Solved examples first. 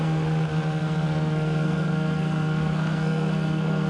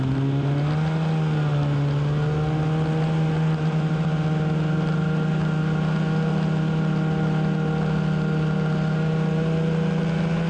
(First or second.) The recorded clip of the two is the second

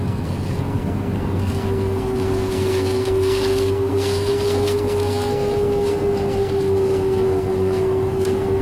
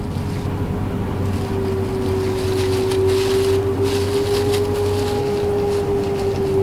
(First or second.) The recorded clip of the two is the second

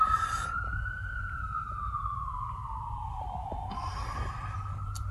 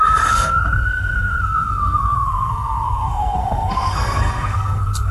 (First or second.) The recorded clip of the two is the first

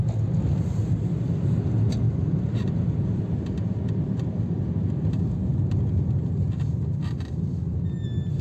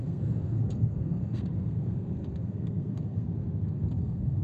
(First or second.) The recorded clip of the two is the first